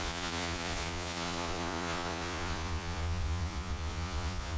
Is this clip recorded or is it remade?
remade